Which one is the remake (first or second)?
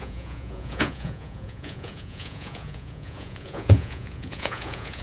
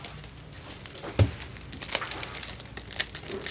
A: first